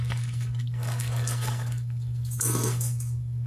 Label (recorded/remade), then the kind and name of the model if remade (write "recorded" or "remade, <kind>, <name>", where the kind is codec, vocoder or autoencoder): remade, codec, SNAC